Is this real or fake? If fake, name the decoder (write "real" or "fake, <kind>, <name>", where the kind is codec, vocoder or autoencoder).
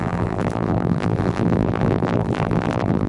fake, vocoder, BigVGAN v2